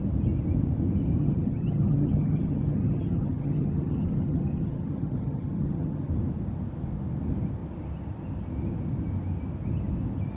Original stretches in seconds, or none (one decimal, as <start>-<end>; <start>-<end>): 0.0-1.2; 6.1-10.4